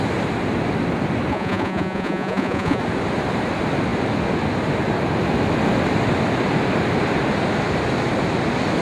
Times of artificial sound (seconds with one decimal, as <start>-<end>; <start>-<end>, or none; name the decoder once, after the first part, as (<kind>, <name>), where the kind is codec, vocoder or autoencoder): 1.3-2.8 (vocoder, Vocos)